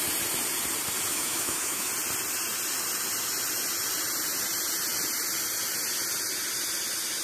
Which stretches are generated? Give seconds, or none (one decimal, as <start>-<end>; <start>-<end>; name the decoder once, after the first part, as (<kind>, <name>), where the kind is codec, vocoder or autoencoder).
1.1-1.9 (autoencoder, DAC-VAE)